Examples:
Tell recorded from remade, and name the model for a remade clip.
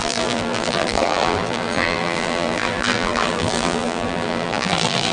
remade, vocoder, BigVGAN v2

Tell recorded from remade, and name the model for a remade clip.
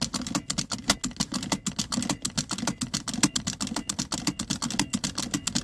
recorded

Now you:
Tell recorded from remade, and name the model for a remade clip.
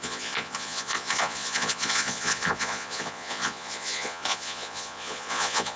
remade, vocoder, Vocos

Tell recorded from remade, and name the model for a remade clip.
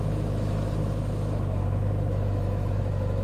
remade, autoencoder, DAC-VAE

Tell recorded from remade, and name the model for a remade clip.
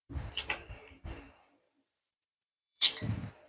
remade, vocoder, BigVGAN v2